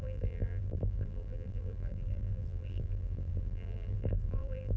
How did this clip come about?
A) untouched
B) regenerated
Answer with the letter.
B